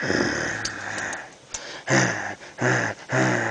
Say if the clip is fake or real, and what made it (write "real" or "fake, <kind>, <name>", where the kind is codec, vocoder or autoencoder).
real